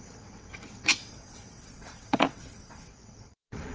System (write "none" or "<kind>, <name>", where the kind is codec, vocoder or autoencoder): vocoder, WaveNeXt